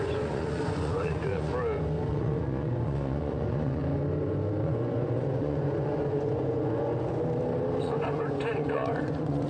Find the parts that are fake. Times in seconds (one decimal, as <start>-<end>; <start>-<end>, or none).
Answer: 0.0-1.5; 2.1-3.8; 4.6-6.9; 7.8-9.5